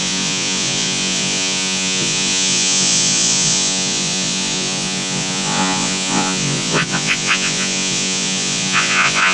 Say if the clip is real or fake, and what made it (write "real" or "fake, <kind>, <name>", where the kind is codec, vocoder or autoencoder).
fake, vocoder, Vocos